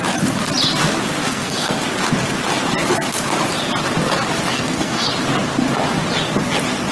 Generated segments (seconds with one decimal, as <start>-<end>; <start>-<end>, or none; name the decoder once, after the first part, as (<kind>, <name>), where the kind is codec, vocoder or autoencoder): 1.2-1.8 (codec, SNAC); 4.5-5.1